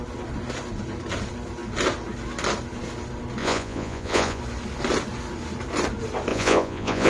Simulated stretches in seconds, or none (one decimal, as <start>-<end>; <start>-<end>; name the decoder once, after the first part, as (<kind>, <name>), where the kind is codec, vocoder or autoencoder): 3.4-4.4 (vocoder, Vocos); 6.3-7.1